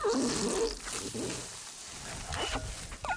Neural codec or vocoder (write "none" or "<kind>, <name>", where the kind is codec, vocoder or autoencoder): none